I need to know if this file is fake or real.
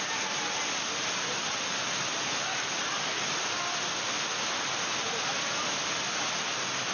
real